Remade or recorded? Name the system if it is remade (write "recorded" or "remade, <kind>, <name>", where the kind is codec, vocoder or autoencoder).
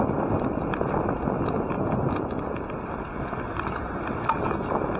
recorded